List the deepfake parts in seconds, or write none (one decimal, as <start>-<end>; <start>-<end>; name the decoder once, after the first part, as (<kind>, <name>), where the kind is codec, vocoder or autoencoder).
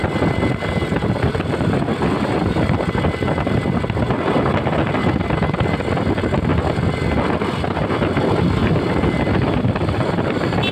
none